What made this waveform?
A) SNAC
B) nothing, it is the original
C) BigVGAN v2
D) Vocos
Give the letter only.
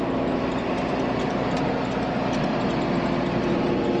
B